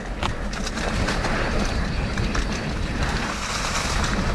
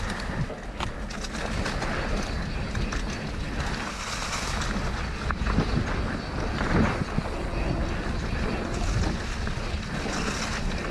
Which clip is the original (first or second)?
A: second